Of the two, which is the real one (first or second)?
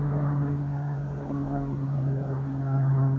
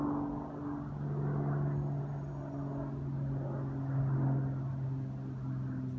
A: second